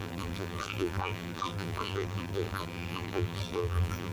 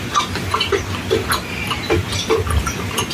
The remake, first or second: first